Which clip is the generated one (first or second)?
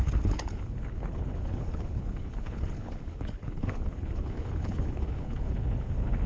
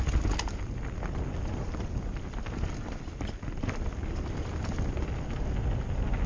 first